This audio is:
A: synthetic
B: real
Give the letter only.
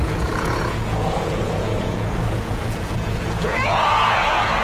A